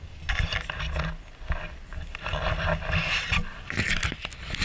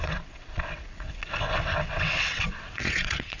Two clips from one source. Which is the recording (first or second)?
first